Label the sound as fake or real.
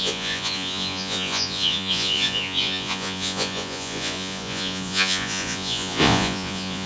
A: fake